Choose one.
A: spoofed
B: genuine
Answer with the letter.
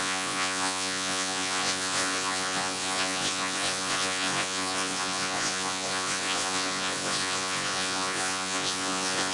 A